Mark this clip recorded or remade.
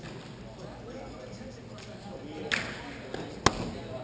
recorded